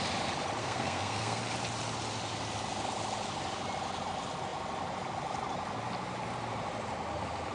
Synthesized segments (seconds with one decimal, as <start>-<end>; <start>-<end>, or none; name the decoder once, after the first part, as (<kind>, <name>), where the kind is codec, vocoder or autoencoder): 0.6-1.4 (codec, SNAC)

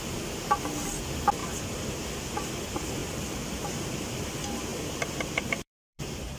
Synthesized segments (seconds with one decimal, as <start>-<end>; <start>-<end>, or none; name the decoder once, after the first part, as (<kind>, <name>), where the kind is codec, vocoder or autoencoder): 3.0-3.9 (vocoder, BigVGAN v2); 4.7-6.0

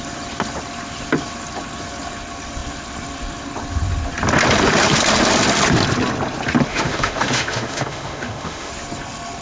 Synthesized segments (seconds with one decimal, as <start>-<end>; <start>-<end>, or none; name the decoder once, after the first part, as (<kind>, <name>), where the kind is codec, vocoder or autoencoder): 6.7-8.7 (autoencoder, DAC-VAE)

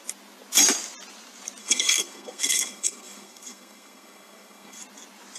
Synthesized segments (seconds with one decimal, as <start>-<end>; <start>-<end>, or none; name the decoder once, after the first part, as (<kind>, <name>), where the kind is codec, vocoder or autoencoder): 1.6-4.8 (codec, SNAC)

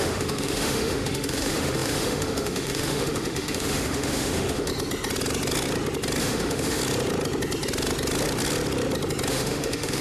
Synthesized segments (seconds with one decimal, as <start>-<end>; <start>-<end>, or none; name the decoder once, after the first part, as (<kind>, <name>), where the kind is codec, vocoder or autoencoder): 0.0-4.7 (autoencoder, DAC-VAE); 6.2-6.8; 9.3-10.0

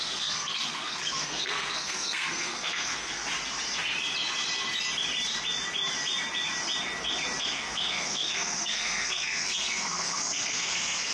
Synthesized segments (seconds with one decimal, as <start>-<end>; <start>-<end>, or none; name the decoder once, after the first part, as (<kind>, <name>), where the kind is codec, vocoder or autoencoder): 0.0-3.2 (codec, SNAC); 7.4-11.1

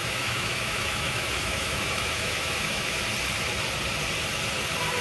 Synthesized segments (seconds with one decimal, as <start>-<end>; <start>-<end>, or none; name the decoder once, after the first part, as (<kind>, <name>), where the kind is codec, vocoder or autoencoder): 0.0-3.0 (autoencoder, DAC-VAE)